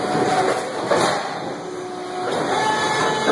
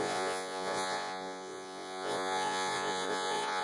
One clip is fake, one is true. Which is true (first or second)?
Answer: first